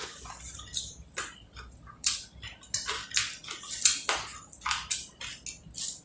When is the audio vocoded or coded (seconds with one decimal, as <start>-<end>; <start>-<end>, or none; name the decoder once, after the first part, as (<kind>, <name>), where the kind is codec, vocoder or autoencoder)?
0.7-2.9 (vocoder, BigVGAN v2)